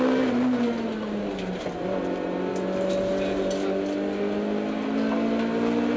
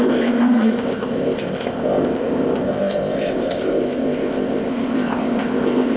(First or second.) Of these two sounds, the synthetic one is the second